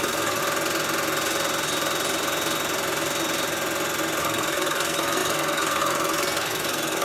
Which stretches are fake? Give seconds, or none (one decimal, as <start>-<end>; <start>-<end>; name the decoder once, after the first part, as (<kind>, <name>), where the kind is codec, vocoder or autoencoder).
0.0-0.4 (codec, SNAC); 4.2-7.0